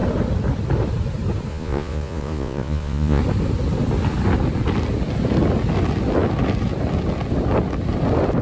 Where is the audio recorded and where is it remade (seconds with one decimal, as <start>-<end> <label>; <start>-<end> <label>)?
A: 0.0-1.5 recorded; 1.5-3.2 remade; 3.2-8.4 recorded